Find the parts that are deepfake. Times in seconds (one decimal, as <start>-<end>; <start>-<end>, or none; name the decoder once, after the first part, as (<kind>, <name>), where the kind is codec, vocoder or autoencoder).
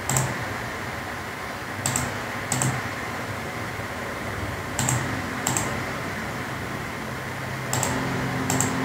2.9-6.5 (vocoder, BigVGAN v2)